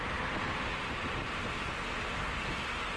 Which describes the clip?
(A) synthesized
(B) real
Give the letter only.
B